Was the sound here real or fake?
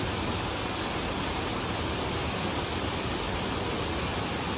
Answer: real